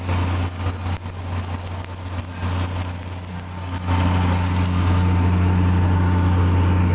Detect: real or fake real